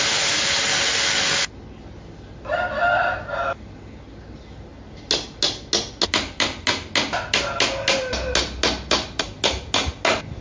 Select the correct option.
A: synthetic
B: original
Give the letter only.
B